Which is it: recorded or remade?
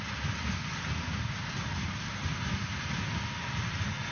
recorded